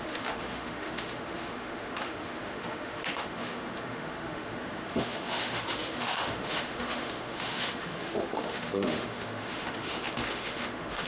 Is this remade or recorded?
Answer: remade